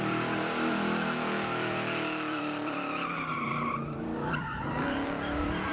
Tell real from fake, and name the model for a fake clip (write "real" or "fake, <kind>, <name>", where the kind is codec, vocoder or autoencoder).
fake, vocoder, BigVGAN v2